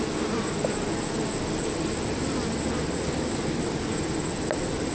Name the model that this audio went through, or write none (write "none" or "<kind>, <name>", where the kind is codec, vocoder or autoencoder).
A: none